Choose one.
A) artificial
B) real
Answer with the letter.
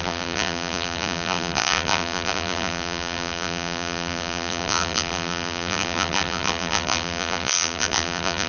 A